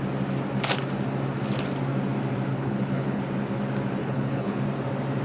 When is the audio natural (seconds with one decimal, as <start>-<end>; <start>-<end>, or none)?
0.0-2.5; 3.2-4.0; 4.6-5.2